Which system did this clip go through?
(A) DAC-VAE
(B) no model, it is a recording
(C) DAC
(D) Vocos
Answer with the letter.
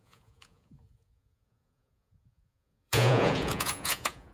D